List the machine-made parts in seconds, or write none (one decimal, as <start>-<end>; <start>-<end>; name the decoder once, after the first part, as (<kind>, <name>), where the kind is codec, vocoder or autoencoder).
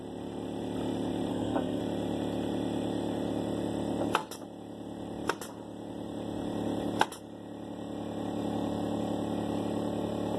1.3-1.8 (codec, SNAC)